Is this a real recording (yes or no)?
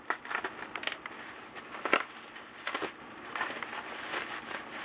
yes